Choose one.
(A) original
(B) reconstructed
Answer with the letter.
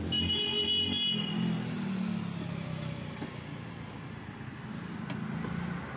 A